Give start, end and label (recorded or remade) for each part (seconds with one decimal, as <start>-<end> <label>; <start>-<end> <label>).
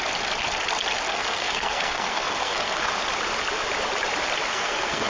0.0-1.1 recorded; 1.1-2.9 remade; 2.9-4.5 recorded; 4.5-5.1 remade